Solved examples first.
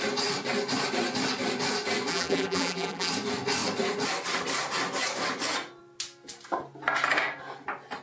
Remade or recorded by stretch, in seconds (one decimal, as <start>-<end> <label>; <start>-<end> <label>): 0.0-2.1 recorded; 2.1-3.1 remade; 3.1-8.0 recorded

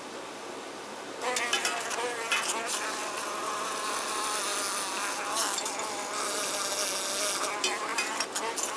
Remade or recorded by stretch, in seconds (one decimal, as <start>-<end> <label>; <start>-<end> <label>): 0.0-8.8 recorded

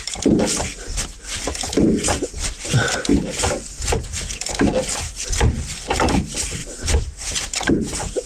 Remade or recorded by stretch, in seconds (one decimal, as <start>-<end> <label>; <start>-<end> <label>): 0.0-0.9 recorded; 0.9-2.2 remade; 2.2-6.6 recorded; 6.6-7.7 remade; 7.7-8.3 recorded